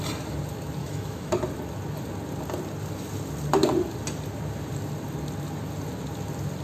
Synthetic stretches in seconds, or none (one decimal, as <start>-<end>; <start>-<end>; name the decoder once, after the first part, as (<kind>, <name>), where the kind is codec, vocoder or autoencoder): 0.8-1.3 (autoencoder, DAC-VAE)